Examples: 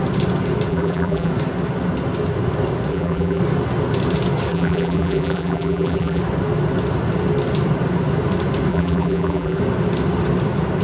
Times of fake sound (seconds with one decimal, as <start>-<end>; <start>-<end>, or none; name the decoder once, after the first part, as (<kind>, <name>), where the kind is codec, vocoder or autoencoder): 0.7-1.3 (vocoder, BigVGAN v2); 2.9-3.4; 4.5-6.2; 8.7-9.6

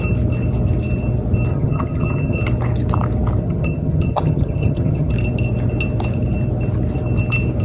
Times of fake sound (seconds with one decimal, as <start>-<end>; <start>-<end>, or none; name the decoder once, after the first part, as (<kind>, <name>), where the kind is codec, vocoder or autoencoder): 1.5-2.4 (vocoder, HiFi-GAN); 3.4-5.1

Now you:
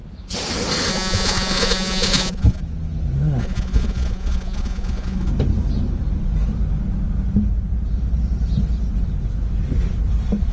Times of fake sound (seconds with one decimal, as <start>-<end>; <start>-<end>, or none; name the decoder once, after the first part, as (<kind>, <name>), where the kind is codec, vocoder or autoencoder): 0.9-2.6 (vocoder, Vocos); 3.4-5.3

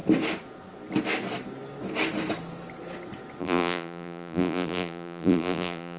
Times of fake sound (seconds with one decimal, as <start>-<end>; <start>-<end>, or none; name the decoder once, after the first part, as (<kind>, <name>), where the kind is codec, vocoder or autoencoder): 3.4-6.0 (vocoder, BigVGAN v2)

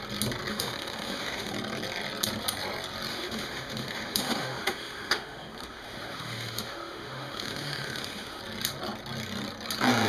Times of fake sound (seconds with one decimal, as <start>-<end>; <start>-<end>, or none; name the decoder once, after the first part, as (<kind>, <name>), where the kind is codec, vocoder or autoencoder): 0.5-1.5 (autoencoder, DAC-VAE); 3.1-8.4

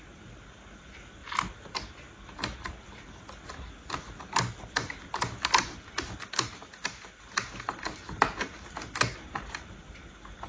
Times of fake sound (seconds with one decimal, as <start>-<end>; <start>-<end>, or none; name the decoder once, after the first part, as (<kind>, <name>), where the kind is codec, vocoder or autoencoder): none